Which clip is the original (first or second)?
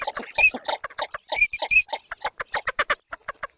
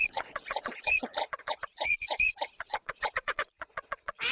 first